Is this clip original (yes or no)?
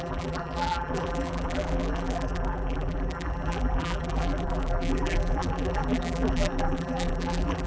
no